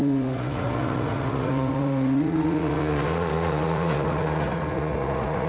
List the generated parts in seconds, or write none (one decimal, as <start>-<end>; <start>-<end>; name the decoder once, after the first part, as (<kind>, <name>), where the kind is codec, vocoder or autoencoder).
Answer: 0.0-5.5 (vocoder, Vocos)